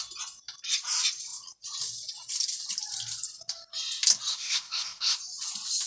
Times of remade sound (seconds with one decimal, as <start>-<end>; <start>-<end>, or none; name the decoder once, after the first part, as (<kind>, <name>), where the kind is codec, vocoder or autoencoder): 4.3-5.2 (codec, ZipCodec)